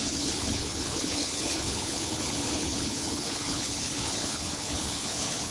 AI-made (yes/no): yes